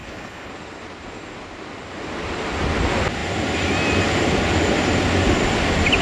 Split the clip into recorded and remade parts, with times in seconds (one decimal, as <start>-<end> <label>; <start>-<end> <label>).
0.0-0.5 remade; 0.5-6.0 recorded